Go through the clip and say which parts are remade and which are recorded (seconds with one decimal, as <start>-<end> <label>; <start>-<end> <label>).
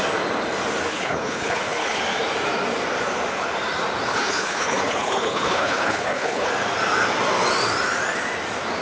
0.0-0.9 recorded; 0.9-2.0 remade; 2.0-4.1 recorded; 4.1-6.5 remade; 6.5-8.8 recorded